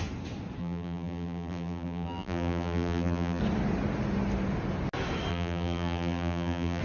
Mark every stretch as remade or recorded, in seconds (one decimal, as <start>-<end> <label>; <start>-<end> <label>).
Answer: 0.0-0.6 recorded; 0.6-3.4 remade; 3.4-5.3 recorded; 5.3-6.8 remade